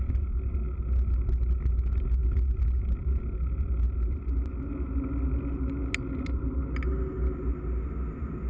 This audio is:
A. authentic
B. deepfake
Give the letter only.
A